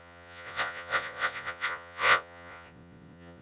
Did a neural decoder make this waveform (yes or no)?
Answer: yes